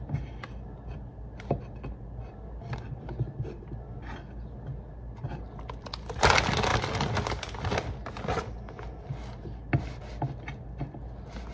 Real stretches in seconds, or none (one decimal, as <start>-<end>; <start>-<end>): 0.0-11.5